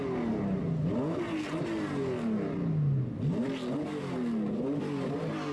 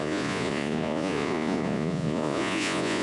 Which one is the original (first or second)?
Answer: first